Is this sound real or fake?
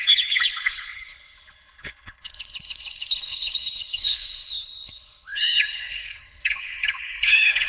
fake